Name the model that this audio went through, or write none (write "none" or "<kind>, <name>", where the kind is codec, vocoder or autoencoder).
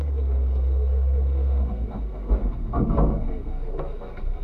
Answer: codec, SNAC